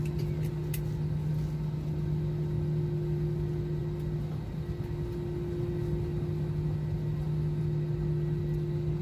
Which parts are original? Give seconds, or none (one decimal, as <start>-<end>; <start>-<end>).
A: 0.0-9.0